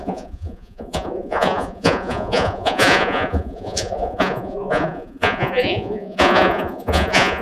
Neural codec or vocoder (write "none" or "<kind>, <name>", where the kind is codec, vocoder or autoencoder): vocoder, Vocos